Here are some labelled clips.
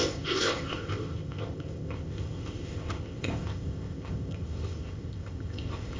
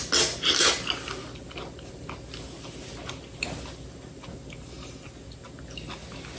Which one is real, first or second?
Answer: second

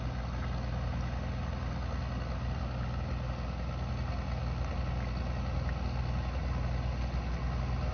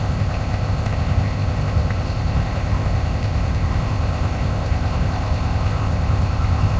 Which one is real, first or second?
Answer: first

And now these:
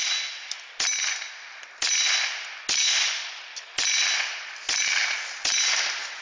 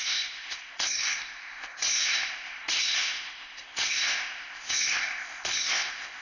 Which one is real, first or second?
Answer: first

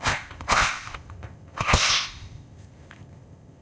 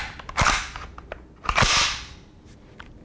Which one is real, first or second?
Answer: second